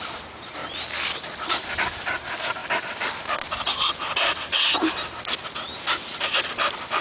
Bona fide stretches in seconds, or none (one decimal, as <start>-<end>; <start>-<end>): 0.0-7.0